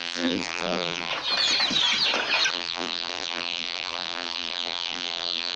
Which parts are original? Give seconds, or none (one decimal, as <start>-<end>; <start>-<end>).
1.1-2.5